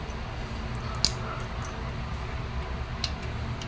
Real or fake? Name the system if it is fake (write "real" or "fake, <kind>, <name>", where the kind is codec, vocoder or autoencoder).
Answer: real